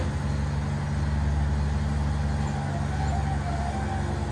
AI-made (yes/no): no